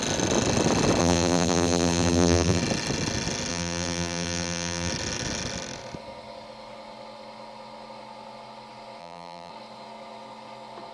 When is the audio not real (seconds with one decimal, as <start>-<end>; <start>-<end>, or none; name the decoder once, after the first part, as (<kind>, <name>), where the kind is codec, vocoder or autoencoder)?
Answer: 1.0-2.6 (vocoder, BigVGAN v2); 3.5-4.9; 9.0-9.5